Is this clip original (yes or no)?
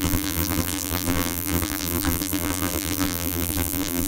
no